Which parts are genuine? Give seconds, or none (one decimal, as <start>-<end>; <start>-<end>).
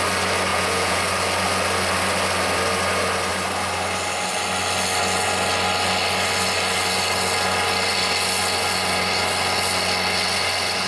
0.0-0.5; 1.0-10.9